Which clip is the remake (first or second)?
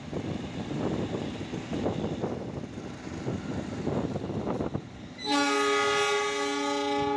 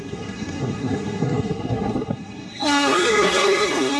second